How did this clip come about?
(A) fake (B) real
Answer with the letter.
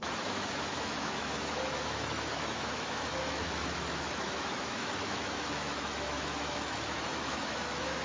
A